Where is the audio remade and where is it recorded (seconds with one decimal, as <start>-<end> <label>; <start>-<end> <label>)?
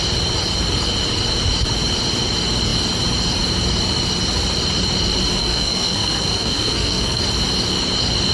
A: 0.0-5.4 recorded; 5.4-7.2 remade; 7.2-8.3 recorded